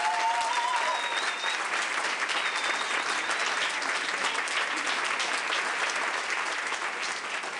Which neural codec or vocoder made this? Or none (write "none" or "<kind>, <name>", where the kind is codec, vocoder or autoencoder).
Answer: none